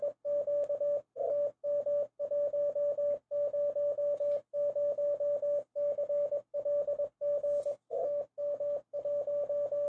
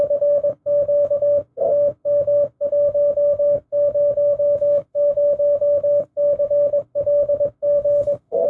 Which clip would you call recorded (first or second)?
first